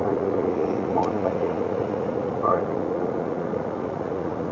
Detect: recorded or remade remade